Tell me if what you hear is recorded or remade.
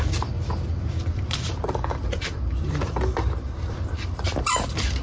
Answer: remade